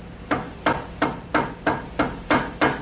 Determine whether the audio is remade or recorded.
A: recorded